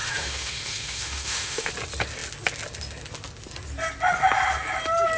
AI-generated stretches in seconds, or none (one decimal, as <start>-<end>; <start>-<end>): 0.0-1.7